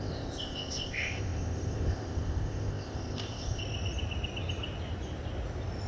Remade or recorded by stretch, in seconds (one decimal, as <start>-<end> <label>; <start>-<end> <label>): 0.0-3.6 remade; 3.6-5.9 recorded